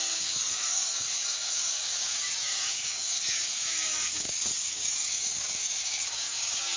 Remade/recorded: remade